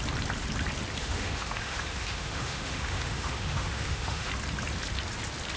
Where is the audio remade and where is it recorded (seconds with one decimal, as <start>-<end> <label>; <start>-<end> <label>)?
0.0-1.0 recorded; 1.0-4.3 remade; 4.3-5.6 recorded

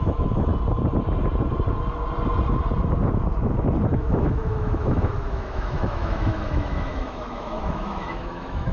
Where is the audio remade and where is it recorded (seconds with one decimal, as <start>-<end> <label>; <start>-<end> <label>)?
0.0-0.5 remade; 0.5-3.9 recorded; 3.9-8.7 remade